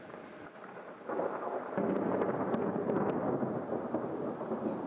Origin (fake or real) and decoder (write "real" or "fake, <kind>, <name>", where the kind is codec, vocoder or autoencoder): real